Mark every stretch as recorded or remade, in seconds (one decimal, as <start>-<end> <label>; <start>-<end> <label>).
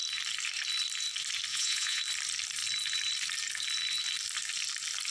0.0-1.5 recorded; 1.5-2.0 remade; 2.0-5.1 recorded